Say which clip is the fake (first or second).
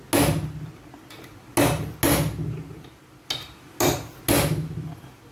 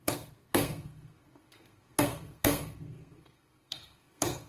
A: second